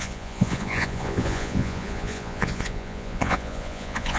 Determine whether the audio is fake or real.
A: fake